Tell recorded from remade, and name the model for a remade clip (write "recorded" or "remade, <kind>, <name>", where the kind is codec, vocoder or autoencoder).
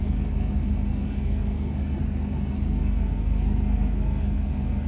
remade, codec, SNAC